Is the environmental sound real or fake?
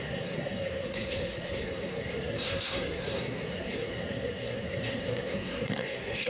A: fake